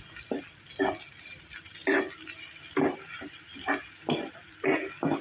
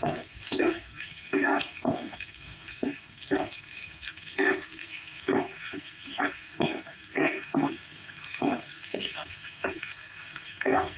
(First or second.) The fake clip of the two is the second